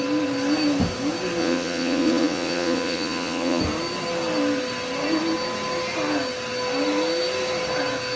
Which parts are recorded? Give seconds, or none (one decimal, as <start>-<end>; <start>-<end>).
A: 0.0-1.4; 3.6-8.2